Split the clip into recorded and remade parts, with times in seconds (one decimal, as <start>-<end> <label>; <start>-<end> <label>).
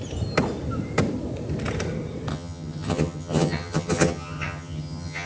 0.0-2.3 recorded; 2.3-5.3 remade